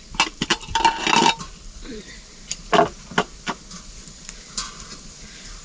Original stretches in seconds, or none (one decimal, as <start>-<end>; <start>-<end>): 0.0-5.6